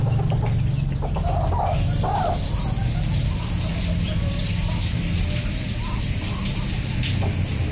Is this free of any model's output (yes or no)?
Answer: yes